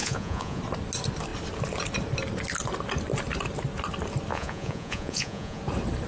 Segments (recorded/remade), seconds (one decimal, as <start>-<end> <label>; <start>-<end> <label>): 0.0-0.6 remade; 0.6-4.3 recorded; 4.3-5.6 remade; 5.6-6.1 recorded